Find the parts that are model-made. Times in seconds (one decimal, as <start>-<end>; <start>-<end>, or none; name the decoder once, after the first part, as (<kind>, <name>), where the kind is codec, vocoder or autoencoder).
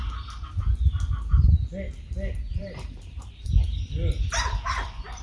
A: 2.5-4.1 (vocoder, BigVGAN v2)